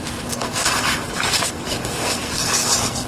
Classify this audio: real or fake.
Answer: fake